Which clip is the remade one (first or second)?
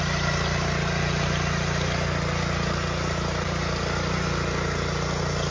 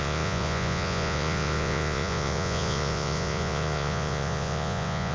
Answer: second